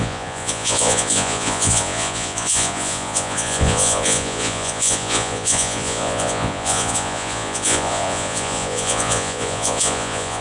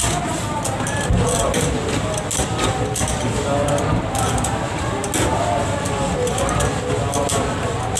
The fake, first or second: first